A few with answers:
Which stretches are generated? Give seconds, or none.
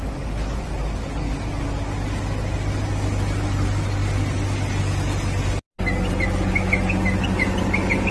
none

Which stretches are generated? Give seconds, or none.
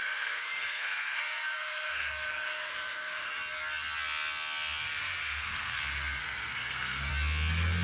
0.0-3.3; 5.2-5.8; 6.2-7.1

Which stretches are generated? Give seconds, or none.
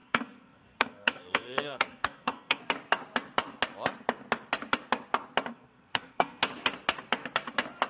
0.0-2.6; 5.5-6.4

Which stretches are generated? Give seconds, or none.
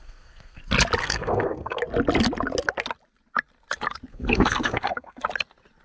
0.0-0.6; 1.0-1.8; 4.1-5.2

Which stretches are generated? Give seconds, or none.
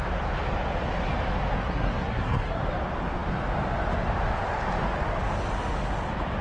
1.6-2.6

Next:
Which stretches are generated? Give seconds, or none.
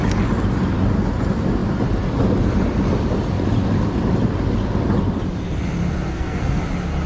6.1-6.6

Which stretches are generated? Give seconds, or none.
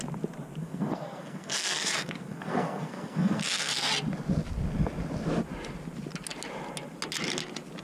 0.6-3.9